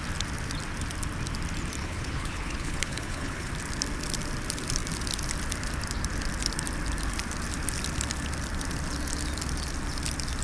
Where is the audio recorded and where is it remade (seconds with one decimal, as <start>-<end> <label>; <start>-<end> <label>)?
0.0-1.8 recorded; 1.8-3.5 remade; 3.5-10.4 recorded